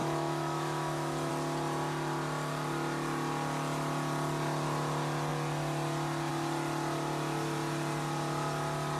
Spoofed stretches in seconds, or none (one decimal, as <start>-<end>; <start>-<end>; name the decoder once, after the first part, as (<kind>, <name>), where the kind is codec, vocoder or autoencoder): 0.0-1.3 (autoencoder, DAC-VAE)